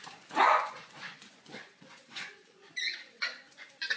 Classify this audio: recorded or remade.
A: remade